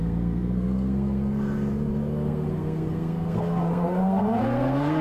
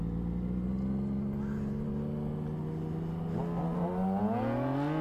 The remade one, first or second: first